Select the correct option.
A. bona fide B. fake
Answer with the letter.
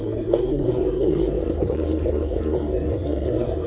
B